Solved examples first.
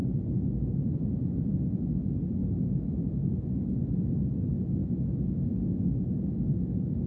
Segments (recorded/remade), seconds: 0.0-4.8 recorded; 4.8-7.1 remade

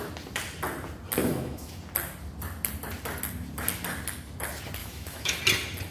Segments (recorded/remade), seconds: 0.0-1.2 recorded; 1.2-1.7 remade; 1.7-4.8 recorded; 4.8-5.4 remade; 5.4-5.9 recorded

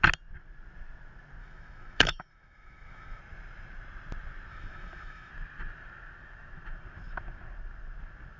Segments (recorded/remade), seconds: 0.0-1.4 recorded; 1.4-3.2 remade; 3.2-4.5 recorded; 4.5-5.3 remade; 5.3-8.4 recorded

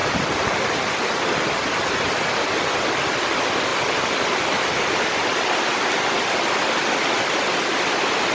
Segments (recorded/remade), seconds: 0.0-8.3 recorded